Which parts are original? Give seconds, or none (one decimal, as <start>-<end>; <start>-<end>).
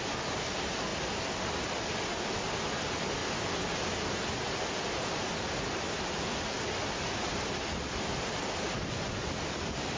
0.0-10.0